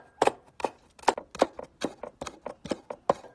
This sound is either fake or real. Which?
real